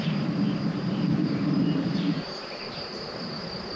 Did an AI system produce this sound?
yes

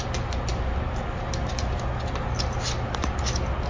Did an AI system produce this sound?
no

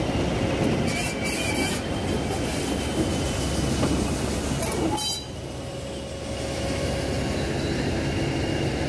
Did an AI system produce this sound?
no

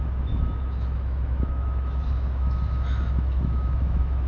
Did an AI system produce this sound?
yes